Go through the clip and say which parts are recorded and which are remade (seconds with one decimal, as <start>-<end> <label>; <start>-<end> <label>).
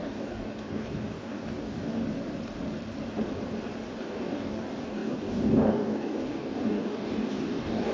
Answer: 0.0-2.0 remade; 2.0-4.0 recorded; 4.0-7.9 remade